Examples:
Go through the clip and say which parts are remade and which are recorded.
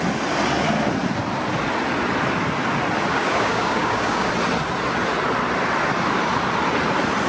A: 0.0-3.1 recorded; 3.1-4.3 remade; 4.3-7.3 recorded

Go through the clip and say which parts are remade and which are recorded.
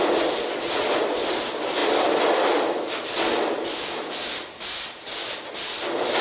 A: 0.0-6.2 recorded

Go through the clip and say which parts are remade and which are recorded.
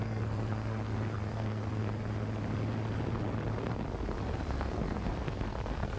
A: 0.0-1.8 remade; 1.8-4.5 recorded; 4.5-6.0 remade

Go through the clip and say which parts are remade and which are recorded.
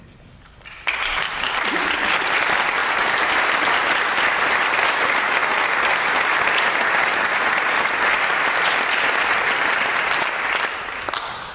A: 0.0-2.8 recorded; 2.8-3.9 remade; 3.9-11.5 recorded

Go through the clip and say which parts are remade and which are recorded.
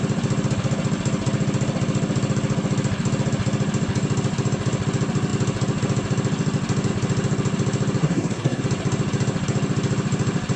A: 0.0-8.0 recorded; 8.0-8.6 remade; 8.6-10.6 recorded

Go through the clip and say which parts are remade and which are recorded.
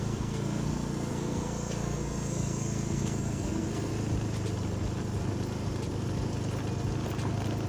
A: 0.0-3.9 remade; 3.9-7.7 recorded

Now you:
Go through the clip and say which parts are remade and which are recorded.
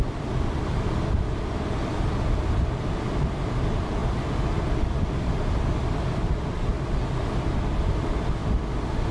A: 0.0-9.1 recorded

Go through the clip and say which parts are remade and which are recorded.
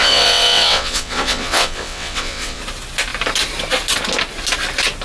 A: 0.0-2.6 remade; 2.6-5.0 recorded